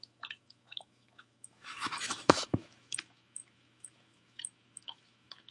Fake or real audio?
fake